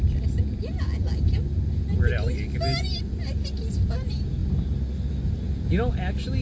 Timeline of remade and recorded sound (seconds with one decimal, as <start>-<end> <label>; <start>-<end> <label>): 0.0-6.4 recorded